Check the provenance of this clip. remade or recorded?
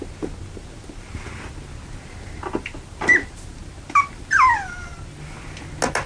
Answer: recorded